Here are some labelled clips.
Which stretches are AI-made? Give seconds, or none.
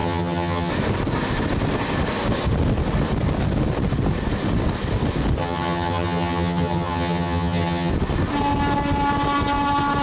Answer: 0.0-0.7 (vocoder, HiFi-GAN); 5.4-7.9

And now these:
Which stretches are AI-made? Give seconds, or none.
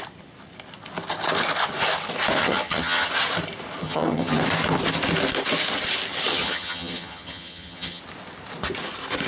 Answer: 2.4-3.1 (vocoder, HiFi-GAN); 3.8-4.4; 6.3-8.0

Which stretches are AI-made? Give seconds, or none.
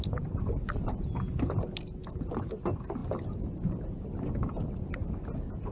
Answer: none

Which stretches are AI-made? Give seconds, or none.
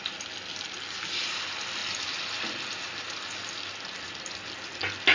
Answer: none